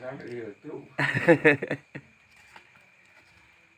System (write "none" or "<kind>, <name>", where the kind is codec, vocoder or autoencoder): none